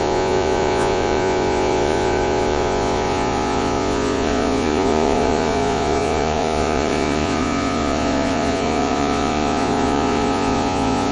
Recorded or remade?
remade